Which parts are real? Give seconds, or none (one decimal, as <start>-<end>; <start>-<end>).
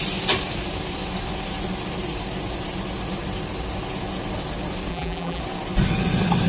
0.0-4.9; 5.4-6.5